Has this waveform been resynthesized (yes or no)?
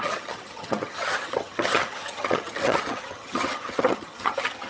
yes